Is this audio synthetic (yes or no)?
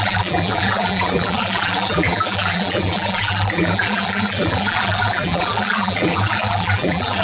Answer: yes